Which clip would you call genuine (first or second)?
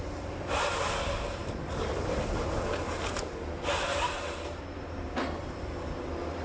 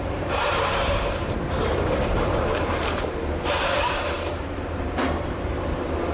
first